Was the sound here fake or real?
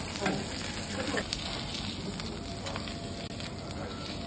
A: real